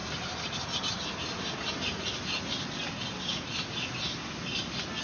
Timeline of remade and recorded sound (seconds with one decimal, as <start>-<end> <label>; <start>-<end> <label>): 0.0-5.0 recorded